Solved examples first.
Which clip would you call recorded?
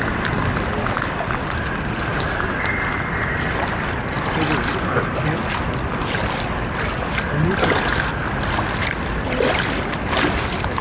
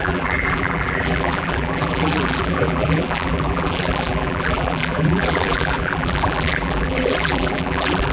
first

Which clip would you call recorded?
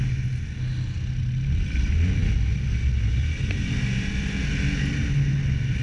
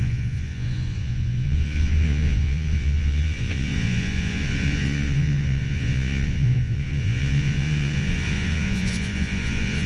first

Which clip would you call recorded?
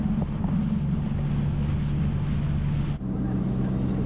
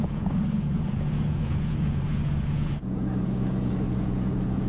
first